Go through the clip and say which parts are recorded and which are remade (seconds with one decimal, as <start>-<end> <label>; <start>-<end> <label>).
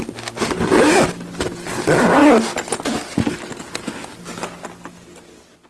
0.0-5.7 recorded